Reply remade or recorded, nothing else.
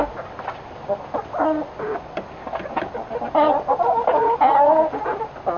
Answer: recorded